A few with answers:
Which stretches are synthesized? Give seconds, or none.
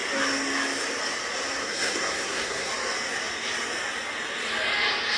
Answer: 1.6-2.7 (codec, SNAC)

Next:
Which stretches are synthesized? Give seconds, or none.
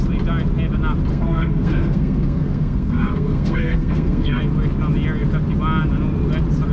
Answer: 1.1-4.4 (codec, SNAC)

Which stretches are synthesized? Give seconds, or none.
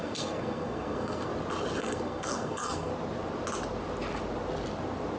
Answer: 0.0-1.3 (codec, SNAC); 1.8-2.9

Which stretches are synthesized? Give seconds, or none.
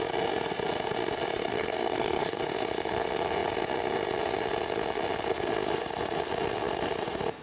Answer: 1.5-2.4 (codec, SNAC)